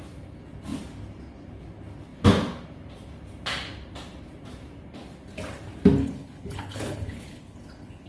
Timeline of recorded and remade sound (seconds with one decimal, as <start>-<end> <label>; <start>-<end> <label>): 0.0-6.0 recorded; 6.0-8.1 remade